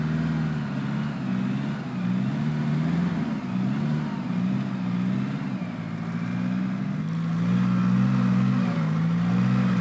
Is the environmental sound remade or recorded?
recorded